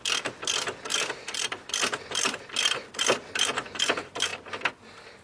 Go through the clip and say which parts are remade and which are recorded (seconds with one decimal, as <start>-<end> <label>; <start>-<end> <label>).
0.0-0.9 recorded; 0.9-3.5 remade; 3.5-5.2 recorded